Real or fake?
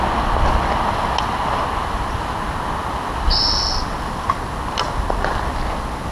real